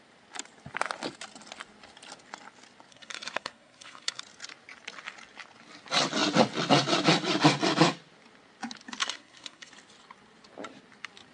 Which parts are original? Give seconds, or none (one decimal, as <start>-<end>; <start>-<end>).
0.0-2.9; 4.2-9.0; 9.7-11.3